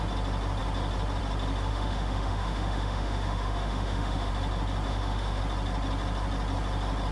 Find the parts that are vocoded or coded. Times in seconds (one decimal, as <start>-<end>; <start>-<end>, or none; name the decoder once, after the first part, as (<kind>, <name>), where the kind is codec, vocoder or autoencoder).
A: 1.7-4.3 (autoencoder, DAC-VAE); 4.9-5.4